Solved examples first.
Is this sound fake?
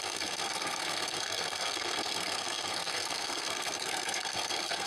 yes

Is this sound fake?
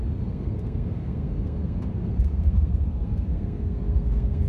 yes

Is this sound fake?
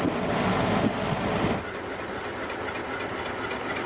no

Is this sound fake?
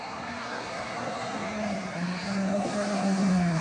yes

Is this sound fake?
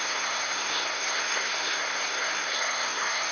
yes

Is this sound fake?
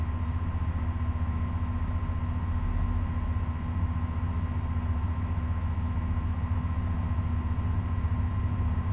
no